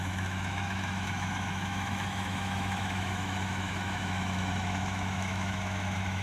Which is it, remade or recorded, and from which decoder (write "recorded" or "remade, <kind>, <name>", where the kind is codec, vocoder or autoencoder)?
remade, autoencoder, DAC-VAE